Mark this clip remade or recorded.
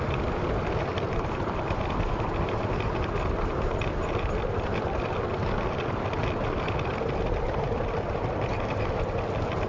recorded